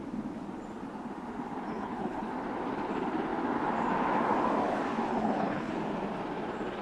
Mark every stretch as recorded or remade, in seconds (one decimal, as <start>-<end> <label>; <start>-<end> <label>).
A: 0.0-1.7 recorded; 1.7-2.3 remade; 2.3-5.1 recorded; 5.1-5.7 remade; 5.7-6.8 recorded